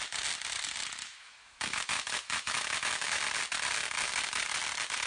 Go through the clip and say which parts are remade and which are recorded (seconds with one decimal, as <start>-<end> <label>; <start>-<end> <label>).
0.0-1.0 recorded; 1.0-3.2 remade; 3.2-5.1 recorded